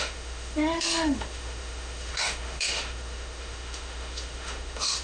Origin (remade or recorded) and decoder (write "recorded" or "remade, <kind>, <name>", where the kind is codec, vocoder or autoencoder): remade, autoencoder, DAC-VAE